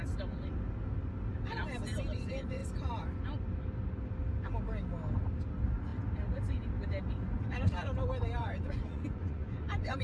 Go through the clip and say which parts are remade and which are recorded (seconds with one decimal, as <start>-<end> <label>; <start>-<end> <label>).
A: 0.0-8.4 recorded; 8.4-10.0 remade

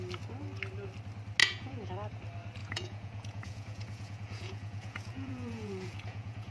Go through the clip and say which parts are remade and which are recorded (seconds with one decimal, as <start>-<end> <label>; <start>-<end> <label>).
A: 0.0-1.4 recorded; 1.4-1.9 remade; 1.9-2.6 recorded; 2.6-6.5 remade